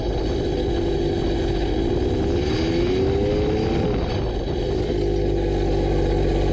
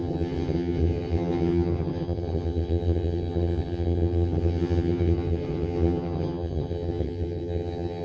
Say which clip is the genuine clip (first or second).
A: first